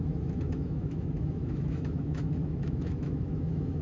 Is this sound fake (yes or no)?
yes